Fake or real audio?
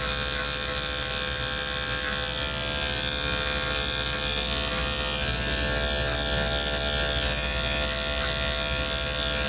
real